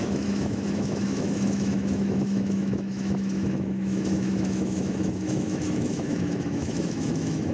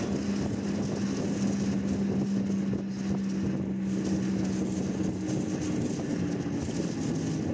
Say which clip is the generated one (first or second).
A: first